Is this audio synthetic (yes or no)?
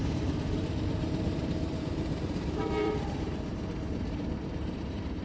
yes